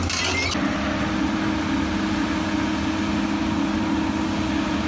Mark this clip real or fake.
real